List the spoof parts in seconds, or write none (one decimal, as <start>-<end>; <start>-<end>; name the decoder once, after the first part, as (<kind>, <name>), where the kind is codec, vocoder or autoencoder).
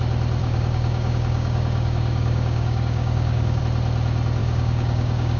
0.4-3.6 (codec, DAC); 4.4-5.4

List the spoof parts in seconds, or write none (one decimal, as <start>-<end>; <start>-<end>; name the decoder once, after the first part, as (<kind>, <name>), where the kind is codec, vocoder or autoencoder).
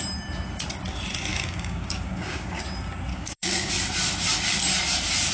1.3-2.6 (codec, DAC); 3.1-3.7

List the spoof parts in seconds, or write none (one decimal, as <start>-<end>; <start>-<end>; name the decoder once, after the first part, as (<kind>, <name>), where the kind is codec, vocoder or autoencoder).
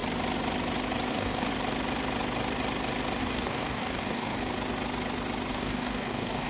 1.1-1.5 (codec, DAC); 3.2-4.5; 5.5-6.5